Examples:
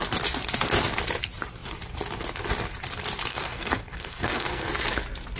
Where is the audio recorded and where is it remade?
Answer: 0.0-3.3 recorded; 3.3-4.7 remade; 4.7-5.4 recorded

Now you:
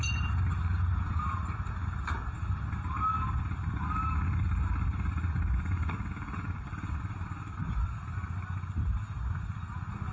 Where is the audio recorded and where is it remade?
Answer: 0.0-10.1 recorded

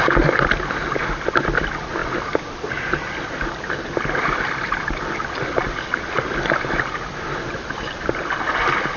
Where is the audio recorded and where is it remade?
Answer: 0.0-9.0 recorded